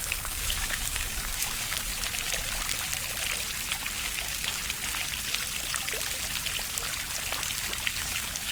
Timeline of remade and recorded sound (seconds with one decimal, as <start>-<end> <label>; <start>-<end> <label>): 0.0-1.9 remade; 1.9-4.0 recorded; 4.0-4.6 remade; 4.6-8.0 recorded; 8.0-8.5 remade